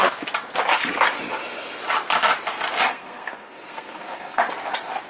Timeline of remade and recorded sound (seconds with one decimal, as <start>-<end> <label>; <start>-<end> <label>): 0.0-2.9 recorded; 2.9-4.4 remade; 4.4-5.1 recorded